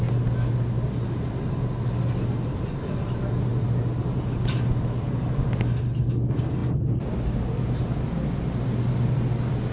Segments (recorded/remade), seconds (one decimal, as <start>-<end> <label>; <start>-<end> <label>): 0.0-9.7 recorded